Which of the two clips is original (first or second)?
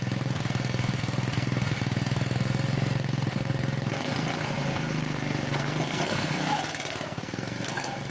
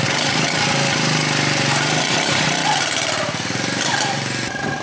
second